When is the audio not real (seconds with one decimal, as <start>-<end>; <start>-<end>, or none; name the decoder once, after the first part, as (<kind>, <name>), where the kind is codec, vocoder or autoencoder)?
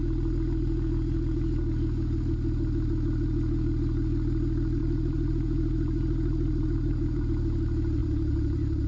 4.8-7.2 (vocoder, BigVGAN v2); 8.0-8.9